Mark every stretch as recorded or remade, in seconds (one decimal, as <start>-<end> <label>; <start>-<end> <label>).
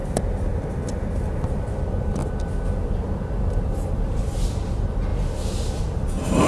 0.0-0.7 recorded; 0.7-2.2 remade; 2.2-3.0 recorded; 3.0-5.1 remade; 5.1-5.8 recorded; 5.8-6.5 remade